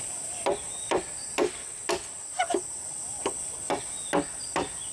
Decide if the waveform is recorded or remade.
recorded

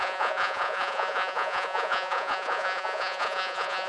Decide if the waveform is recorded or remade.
remade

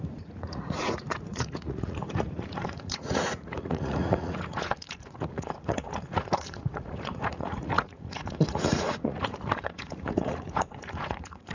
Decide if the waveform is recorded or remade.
remade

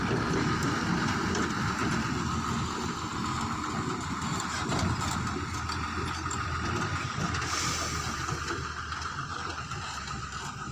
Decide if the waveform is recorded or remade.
recorded